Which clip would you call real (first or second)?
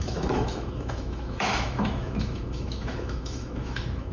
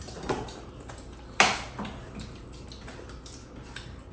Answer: second